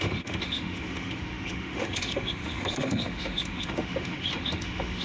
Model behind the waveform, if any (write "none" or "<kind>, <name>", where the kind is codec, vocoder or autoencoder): autoencoder, DAC-VAE